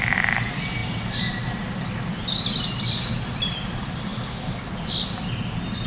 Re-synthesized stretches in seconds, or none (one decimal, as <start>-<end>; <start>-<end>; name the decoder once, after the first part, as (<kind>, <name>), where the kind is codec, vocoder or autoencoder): none